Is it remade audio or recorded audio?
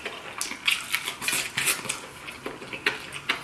recorded